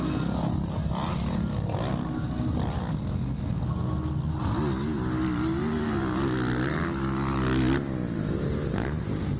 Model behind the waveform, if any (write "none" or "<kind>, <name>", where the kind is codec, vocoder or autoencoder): none